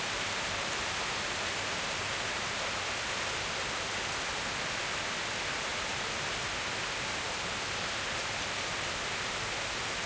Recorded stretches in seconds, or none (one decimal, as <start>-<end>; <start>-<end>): 0.0-10.1